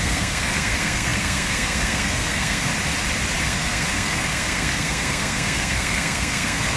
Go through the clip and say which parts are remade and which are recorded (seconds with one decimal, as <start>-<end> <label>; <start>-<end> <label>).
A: 0.0-2.7 remade; 2.7-3.4 recorded; 3.4-6.8 remade